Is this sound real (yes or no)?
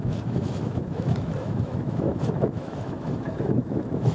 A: no